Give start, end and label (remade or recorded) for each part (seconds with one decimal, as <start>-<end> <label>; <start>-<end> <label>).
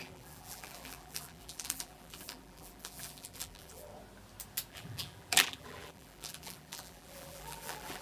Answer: 0.0-3.9 remade; 3.9-4.7 recorded; 4.7-8.0 remade